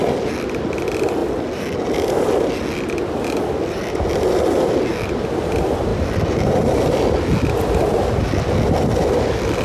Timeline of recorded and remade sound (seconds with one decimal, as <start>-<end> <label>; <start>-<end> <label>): 0.0-9.6 recorded